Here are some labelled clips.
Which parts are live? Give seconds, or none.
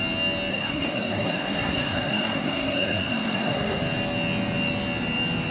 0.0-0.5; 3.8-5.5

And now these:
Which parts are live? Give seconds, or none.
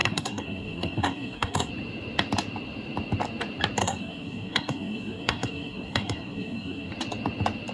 1.7-3.8; 6.9-7.7